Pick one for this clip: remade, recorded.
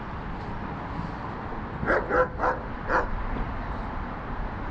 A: recorded